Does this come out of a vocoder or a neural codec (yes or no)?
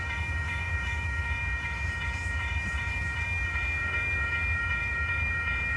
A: yes